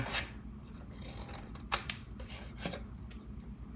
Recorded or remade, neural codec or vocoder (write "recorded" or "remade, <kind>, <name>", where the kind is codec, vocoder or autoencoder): remade, vocoder, BigVGAN v2